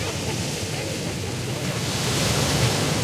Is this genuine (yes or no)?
yes